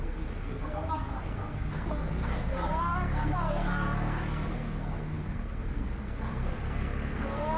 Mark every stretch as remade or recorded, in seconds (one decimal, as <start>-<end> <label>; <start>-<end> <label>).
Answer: 0.0-7.6 remade